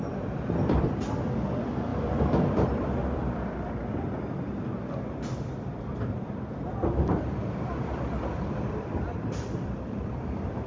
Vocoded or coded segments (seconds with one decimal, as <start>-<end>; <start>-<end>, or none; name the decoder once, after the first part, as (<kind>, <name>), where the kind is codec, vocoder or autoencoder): 0.0-7.4 (vocoder, BigVGAN v2); 8.4-10.7